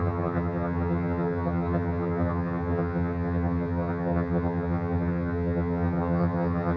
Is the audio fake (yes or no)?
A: yes